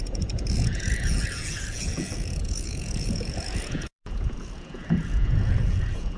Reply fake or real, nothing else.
fake